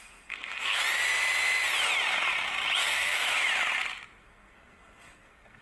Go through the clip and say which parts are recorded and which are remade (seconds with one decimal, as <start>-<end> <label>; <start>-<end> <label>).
0.0-0.8 remade; 0.8-2.8 recorded; 2.8-3.4 remade; 3.4-4.2 recorded; 4.2-5.6 remade